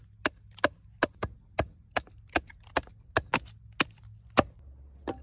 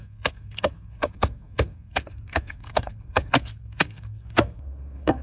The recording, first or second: first